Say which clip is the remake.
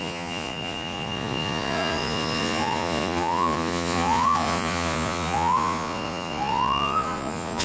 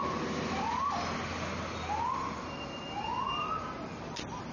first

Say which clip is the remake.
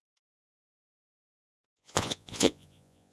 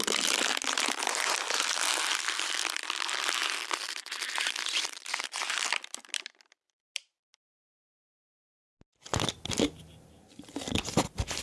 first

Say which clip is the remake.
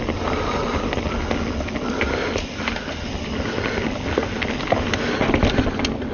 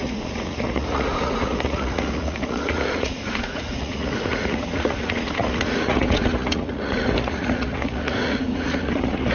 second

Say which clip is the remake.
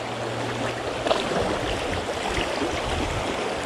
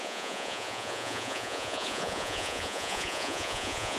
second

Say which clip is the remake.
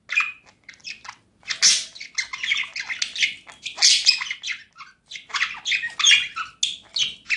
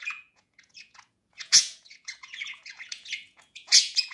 second